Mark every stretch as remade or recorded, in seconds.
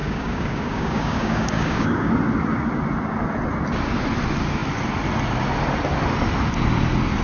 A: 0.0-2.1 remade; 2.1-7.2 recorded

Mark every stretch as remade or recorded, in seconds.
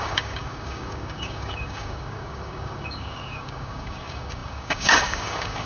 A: 0.0-5.7 remade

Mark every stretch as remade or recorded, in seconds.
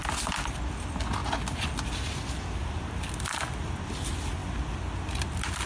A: 0.0-5.7 recorded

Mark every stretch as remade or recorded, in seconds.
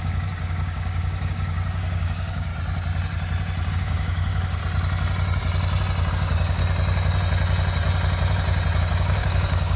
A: 0.0-2.5 remade; 2.5-3.7 recorded; 3.7-4.6 remade; 4.6-6.1 recorded; 6.1-6.6 remade; 6.6-8.8 recorded; 8.8-9.8 remade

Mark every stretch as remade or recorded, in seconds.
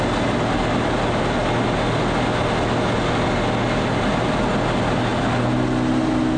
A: 0.0-6.4 recorded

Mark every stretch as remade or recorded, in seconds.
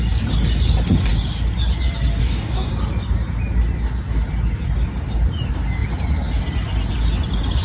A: 0.0-2.2 recorded; 2.2-2.7 remade; 2.7-7.6 recorded